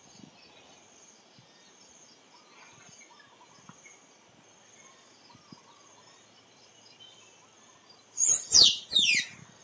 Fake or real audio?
real